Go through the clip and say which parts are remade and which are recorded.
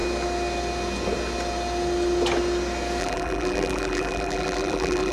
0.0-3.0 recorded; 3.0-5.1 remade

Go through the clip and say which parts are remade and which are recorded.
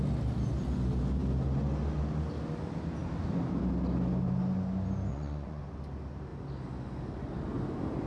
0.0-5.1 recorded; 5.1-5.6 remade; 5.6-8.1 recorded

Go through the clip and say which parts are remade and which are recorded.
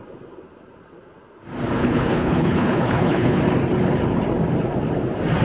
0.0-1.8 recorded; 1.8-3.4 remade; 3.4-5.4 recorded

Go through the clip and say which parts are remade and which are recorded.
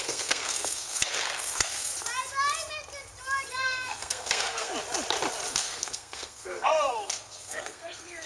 0.0-1.9 remade; 1.9-3.5 recorded; 3.5-4.7 remade; 4.7-5.5 recorded; 5.5-8.3 remade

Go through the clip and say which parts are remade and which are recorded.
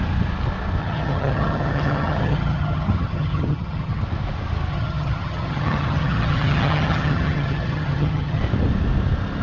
0.0-0.8 recorded; 0.8-4.0 remade; 4.0-4.7 recorded; 4.7-8.4 remade; 8.4-9.4 recorded